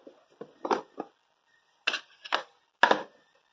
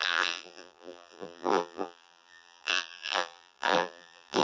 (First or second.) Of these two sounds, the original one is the first